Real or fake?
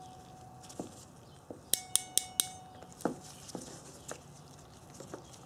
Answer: real